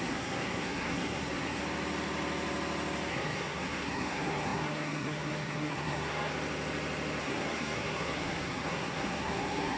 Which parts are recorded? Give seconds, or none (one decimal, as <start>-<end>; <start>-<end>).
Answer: 1.6-3.1; 6.3-7.2